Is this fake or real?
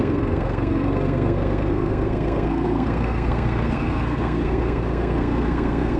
fake